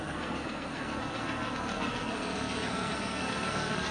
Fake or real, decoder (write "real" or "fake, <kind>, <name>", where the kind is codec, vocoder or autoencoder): fake, codec, SNAC